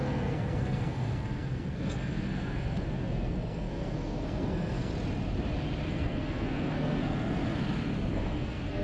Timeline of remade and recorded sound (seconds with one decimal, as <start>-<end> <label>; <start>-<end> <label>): 0.0-4.9 remade; 4.9-5.9 recorded; 5.9-7.4 remade; 7.4-8.1 recorded; 8.1-8.8 remade